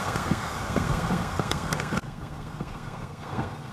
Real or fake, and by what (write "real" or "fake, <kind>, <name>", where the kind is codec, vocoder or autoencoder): fake, codec, SNAC